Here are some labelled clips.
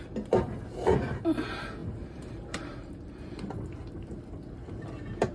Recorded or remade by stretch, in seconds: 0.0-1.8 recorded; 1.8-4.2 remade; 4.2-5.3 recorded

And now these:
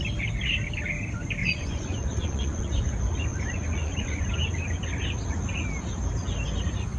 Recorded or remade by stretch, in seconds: 0.0-1.4 recorded; 1.4-2.9 remade; 2.9-3.3 recorded; 3.3-4.3 remade; 4.3-7.0 recorded

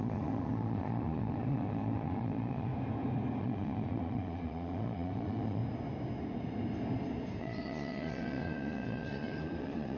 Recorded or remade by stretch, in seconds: 0.0-2.7 remade; 2.7-3.4 recorded; 3.4-5.6 remade; 5.6-7.4 recorded; 7.4-10.0 remade

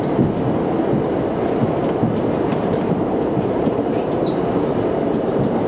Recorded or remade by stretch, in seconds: 0.0-2.5 recorded; 2.5-4.3 remade; 4.3-5.7 recorded

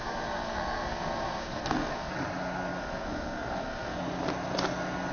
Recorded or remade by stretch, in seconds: 0.0-2.1 remade; 2.1-2.8 recorded; 2.8-4.0 remade; 4.0-5.1 recorded

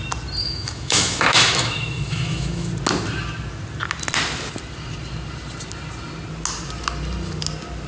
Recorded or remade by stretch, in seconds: 0.0-0.4 recorded; 0.4-2.7 remade; 2.7-7.9 recorded

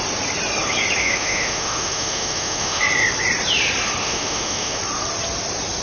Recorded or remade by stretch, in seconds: 0.0-1.0 recorded; 1.0-2.8 remade; 2.8-4.0 recorded; 4.0-4.8 remade; 4.8-5.8 recorded